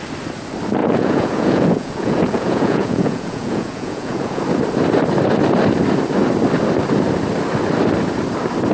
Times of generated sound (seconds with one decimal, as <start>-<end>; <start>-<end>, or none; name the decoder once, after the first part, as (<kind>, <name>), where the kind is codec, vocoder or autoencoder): 0.8-4.4 (vocoder, Vocos)